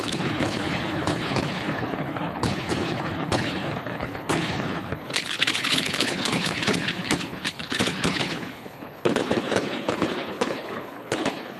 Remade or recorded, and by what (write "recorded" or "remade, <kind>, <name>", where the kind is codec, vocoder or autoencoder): remade, codec, HILCodec